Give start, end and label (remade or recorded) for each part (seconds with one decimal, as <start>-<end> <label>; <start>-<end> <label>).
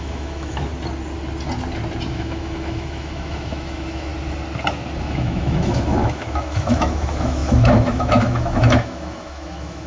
0.0-0.7 remade; 0.7-2.1 recorded; 2.1-4.1 remade; 4.1-5.0 recorded; 5.0-9.9 remade